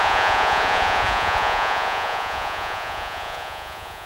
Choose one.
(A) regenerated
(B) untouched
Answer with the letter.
A